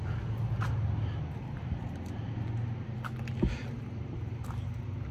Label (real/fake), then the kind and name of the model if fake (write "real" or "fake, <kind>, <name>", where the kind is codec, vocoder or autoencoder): real